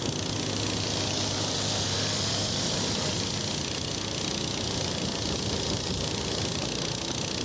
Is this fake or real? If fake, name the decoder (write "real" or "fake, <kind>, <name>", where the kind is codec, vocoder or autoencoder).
real